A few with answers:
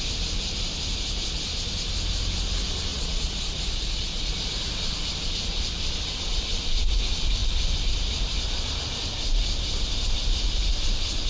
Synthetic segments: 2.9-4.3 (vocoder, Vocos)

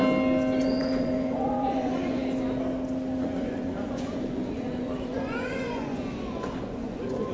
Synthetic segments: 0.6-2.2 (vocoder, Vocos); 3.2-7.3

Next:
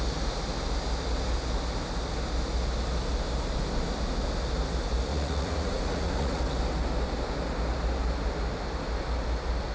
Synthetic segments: 5.1-6.4 (vocoder, Vocos)

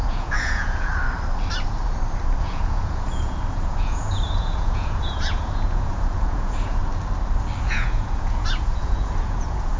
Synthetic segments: 0.0-0.9 (vocoder, Vocos); 2.4-6.8; 7.6-9.8

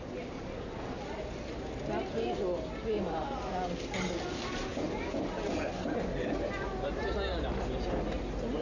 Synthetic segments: none

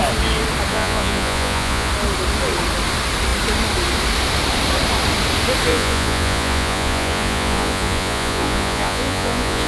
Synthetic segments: 0.7-1.9 (vocoder, Vocos); 5.7-9.7

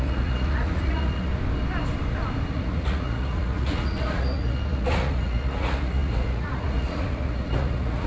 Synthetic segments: 0.0-1.3 (vocoder, Vocos); 2.5-8.1

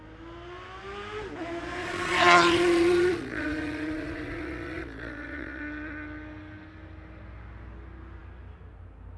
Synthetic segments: 1.8-5.6 (vocoder, Vocos)